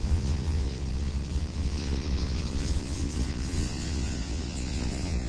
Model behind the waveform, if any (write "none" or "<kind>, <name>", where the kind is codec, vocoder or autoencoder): vocoder, Vocos